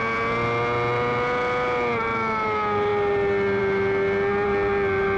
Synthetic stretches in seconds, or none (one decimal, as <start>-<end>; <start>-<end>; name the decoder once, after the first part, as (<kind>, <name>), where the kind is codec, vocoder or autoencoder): none